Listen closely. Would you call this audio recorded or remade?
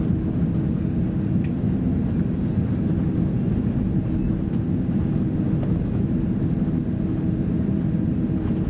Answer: recorded